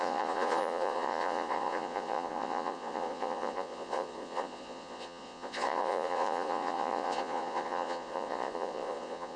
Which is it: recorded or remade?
remade